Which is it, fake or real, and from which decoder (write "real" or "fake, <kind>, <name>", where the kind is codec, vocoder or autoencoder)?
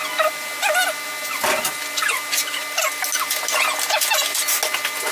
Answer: real